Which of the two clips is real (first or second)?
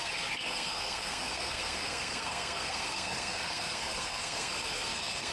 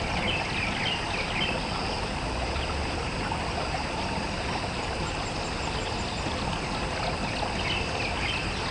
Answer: second